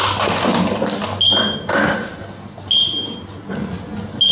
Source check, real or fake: real